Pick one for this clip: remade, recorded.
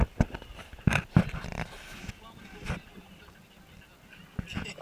recorded